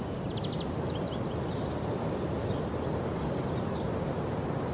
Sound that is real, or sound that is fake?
real